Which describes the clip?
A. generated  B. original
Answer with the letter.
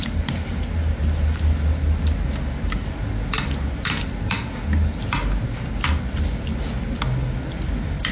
B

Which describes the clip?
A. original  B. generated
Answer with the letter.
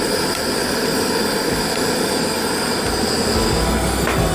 A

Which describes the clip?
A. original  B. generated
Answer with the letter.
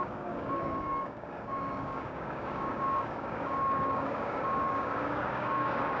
B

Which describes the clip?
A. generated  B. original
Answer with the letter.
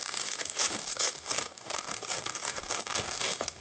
A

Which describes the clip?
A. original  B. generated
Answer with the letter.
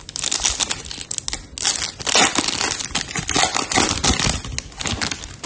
A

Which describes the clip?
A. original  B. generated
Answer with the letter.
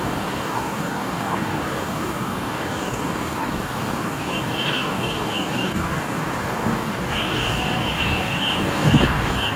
B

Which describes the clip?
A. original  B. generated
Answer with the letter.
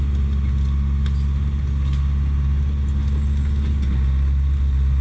A